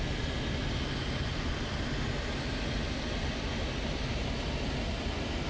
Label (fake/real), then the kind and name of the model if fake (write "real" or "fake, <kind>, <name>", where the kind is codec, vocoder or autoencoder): real